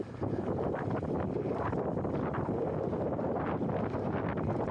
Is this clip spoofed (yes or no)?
no